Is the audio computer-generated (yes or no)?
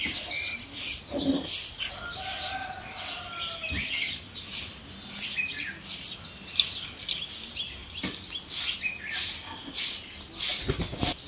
no